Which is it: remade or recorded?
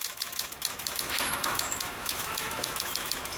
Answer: remade